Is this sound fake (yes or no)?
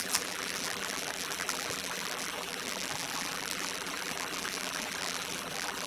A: yes